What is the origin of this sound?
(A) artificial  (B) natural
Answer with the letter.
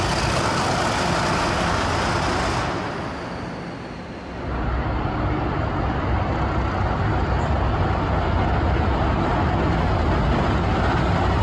B